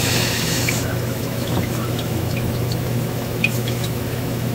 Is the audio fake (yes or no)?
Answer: yes